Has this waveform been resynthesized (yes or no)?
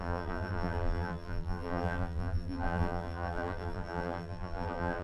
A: yes